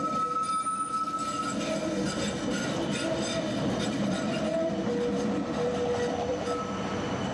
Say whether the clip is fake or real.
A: real